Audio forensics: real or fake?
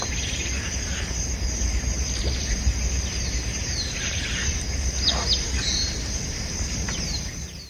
fake